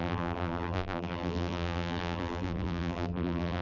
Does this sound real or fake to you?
fake